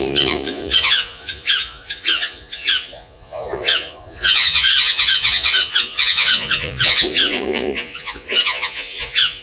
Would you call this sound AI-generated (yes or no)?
yes